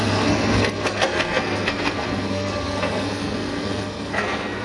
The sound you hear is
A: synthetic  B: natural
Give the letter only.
A